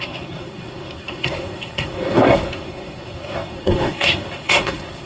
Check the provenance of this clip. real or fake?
fake